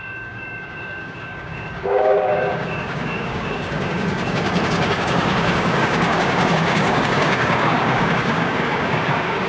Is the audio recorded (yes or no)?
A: no